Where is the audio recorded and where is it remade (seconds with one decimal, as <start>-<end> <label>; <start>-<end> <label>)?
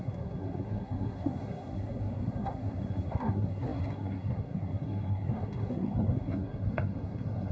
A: 0.0-7.5 remade